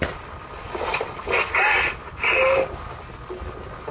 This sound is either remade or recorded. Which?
recorded